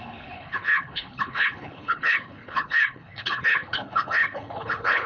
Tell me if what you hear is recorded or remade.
remade